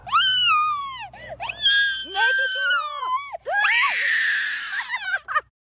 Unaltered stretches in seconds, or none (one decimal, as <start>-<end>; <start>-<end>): 0.0-5.7